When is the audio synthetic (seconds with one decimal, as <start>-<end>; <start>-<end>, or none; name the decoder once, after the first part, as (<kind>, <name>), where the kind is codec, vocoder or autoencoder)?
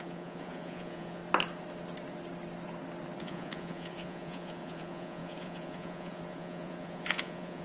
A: 0.0-1.2 (vocoder, Vocos); 3.2-7.6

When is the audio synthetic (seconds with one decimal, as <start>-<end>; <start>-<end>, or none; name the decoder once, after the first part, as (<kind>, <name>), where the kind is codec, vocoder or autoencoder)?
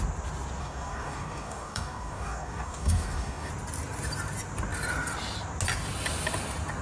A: 0.6-3.5 (codec, DAC)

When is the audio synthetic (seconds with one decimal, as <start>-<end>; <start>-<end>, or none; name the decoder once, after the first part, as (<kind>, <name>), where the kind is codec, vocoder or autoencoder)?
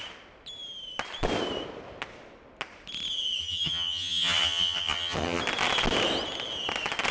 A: 3.4-5.4 (vocoder, HiFi-GAN)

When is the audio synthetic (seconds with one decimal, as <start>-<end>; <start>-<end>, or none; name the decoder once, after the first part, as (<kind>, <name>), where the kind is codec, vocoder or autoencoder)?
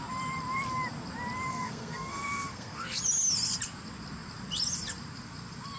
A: 1.5-3.0 (codec, SNAC)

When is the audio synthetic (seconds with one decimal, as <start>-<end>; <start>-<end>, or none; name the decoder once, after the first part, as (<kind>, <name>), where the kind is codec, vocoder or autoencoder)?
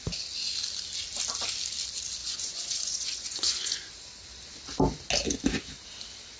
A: 2.2-3.9 (vocoder, Vocos)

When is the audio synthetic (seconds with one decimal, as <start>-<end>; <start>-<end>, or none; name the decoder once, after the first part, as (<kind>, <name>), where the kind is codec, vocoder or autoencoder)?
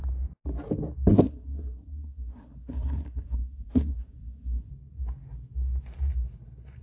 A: 1.1-4.7 (codec, SNAC)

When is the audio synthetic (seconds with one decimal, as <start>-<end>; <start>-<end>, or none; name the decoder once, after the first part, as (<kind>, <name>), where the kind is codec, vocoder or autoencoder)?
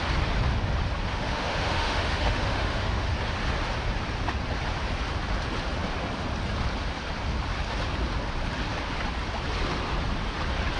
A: 1.1-3.1 (autoencoder, DAC-VAE)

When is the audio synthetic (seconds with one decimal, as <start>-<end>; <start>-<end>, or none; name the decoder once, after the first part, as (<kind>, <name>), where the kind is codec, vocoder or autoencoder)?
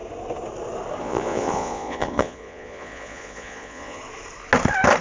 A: 1.0-4.0 (vocoder, Vocos)